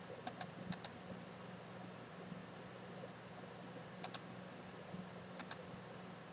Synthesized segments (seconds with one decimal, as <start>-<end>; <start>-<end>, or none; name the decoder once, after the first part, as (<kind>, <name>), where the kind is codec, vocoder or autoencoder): none